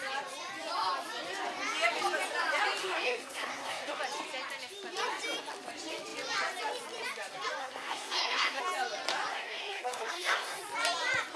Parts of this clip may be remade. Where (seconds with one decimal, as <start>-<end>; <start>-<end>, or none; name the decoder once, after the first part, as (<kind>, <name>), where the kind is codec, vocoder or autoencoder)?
2.8-4.0 (codec, SNAC); 7.6-8.6; 9.3-10.6